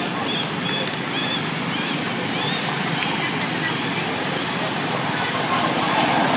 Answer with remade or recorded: recorded